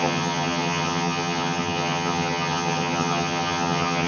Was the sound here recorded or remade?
remade